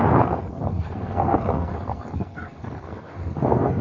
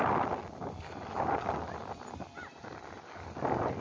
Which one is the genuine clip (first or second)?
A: second